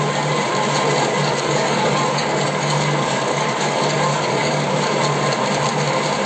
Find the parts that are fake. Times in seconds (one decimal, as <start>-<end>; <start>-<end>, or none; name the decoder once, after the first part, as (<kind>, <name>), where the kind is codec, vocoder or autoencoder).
1.2-5.0 (codec, DAC)